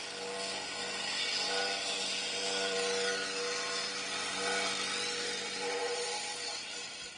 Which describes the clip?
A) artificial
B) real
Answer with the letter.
B